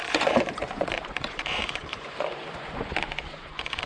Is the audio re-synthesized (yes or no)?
yes